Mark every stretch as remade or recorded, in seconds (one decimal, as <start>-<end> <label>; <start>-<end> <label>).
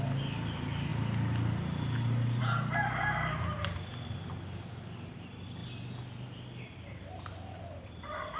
0.0-5.6 remade; 5.6-7.7 recorded; 7.7-8.4 remade